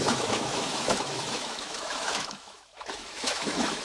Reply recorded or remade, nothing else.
remade